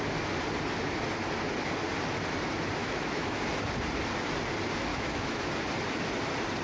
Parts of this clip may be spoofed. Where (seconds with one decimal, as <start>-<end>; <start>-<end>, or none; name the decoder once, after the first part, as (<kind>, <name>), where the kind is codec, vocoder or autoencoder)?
2.8-3.5 (autoencoder, DAC-VAE); 4.9-5.5

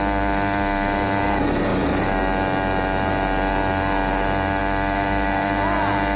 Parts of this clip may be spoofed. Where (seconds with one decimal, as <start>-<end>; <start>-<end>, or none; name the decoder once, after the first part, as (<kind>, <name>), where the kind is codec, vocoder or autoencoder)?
none

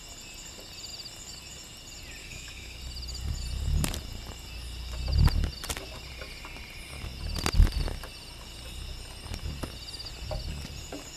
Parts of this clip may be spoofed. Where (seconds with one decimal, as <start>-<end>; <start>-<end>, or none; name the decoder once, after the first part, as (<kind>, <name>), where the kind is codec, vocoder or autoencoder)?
2.2-2.8 (codec, DAC)

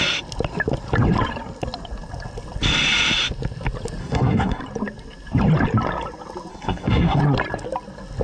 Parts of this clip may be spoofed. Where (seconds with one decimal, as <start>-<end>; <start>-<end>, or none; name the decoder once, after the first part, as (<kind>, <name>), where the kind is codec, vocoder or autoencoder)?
4.0-4.6 (codec, SNAC); 6.5-7.2

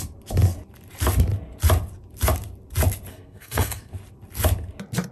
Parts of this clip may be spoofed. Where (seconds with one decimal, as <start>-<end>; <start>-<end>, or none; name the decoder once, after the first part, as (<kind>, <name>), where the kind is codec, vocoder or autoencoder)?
3.1-3.9 (codec, SNAC)